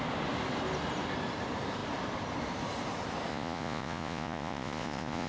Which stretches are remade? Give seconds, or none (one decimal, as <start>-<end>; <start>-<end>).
3.3-5.3